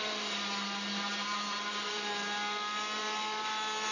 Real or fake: real